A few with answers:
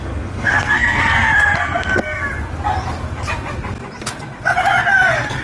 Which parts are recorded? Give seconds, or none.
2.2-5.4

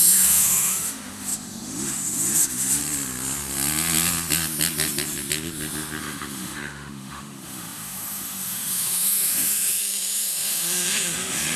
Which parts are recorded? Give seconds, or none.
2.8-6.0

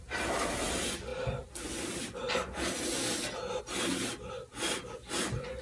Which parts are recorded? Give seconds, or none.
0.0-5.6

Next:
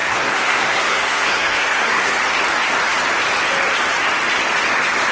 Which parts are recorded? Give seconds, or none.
2.1-5.1

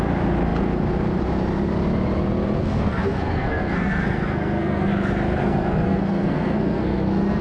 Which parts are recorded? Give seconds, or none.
0.0-2.6; 4.9-5.4

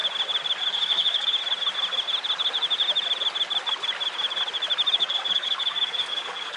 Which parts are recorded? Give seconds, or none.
0.0-0.7; 1.4-4.9